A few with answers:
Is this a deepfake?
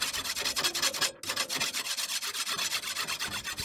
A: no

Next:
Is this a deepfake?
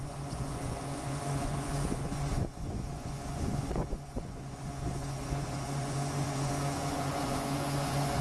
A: yes